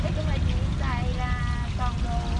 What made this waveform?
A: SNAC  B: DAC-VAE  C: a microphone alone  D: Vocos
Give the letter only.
C